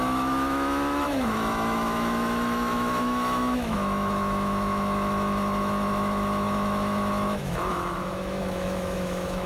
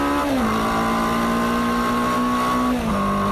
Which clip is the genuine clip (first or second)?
second